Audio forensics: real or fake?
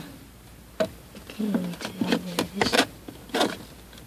real